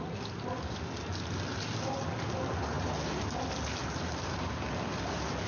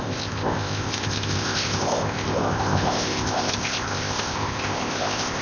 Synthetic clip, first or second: second